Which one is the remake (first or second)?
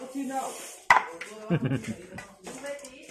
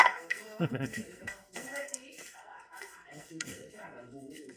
second